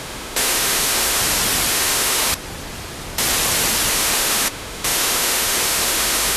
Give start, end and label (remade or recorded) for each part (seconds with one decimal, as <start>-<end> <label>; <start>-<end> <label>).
0.0-1.2 remade; 1.2-1.7 recorded; 1.7-2.3 remade; 2.3-3.9 recorded; 3.9-6.4 remade